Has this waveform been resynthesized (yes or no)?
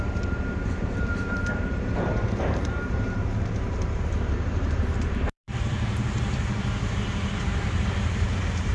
yes